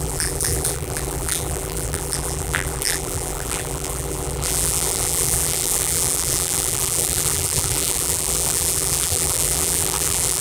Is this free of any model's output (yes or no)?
no